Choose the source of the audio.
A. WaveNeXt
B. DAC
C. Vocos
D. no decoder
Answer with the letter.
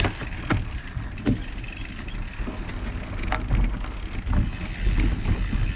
D